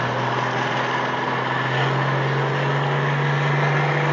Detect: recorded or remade recorded